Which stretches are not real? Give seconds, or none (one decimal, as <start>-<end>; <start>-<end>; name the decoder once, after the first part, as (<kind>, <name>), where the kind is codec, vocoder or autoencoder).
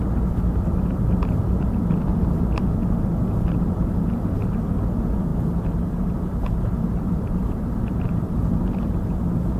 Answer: 5.3-8.3 (vocoder, BigVGAN v2)